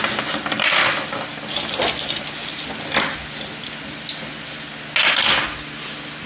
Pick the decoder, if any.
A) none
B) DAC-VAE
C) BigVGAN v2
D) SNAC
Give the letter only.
A